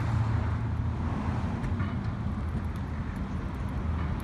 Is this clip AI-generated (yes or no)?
no